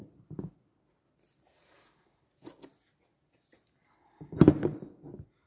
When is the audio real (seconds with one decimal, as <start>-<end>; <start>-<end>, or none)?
0.0-5.5